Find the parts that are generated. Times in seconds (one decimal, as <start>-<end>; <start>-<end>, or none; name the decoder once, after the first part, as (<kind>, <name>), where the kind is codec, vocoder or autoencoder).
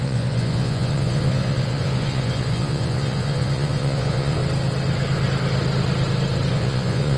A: 0.0-4.4 (vocoder, Vocos); 6.5-7.2